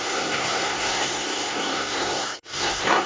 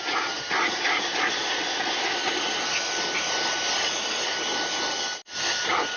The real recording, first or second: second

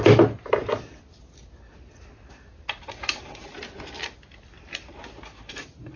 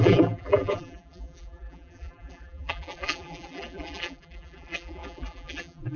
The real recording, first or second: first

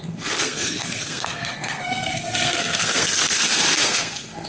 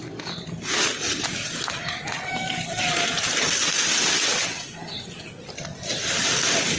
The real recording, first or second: second